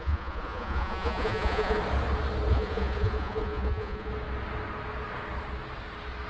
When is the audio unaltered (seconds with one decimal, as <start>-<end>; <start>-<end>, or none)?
1.8-2.5; 4.1-6.3